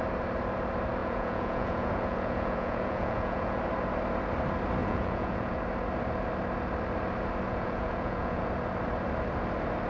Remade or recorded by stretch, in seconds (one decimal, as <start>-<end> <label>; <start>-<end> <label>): 0.0-1.0 recorded; 1.0-3.6 remade; 3.6-4.8 recorded; 4.8-5.6 remade; 5.6-7.5 recorded; 7.5-8.5 remade; 8.5-9.9 recorded